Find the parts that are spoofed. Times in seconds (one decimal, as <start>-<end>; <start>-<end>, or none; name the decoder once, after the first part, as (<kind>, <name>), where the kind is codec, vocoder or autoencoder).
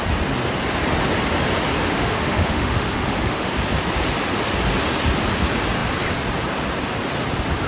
1.7-3.5 (autoencoder, DAC-VAE)